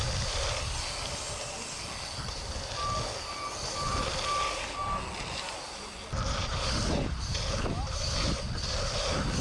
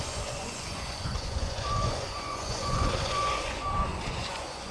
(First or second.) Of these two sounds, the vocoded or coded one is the second